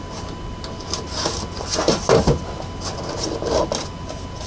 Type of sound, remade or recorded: recorded